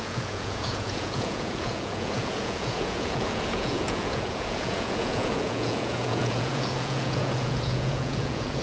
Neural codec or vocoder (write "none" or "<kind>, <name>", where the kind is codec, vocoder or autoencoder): vocoder, Vocos